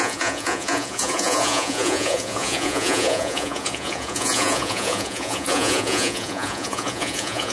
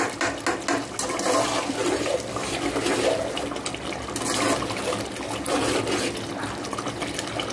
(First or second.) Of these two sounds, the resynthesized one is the first